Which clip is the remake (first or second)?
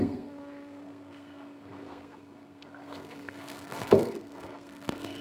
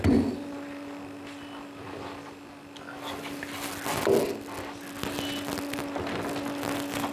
first